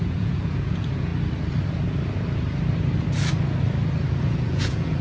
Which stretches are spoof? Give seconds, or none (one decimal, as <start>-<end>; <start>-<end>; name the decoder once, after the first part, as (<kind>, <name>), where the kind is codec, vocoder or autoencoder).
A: 0.0-1.1 (vocoder, Vocos); 4.1-5.0